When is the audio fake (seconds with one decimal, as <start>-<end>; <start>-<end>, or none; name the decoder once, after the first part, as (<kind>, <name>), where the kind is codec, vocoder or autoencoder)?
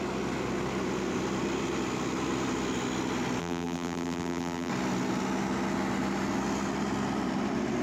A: 3.4-4.7 (vocoder, BigVGAN v2)